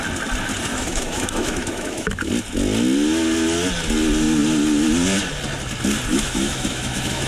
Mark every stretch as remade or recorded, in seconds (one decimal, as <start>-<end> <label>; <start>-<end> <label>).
0.0-0.7 recorded; 0.7-2.3 remade; 2.3-6.1 recorded; 6.1-7.3 remade